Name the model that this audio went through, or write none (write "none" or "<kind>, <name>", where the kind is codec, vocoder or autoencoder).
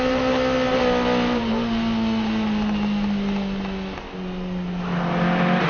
none